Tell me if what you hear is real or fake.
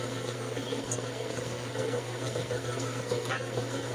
fake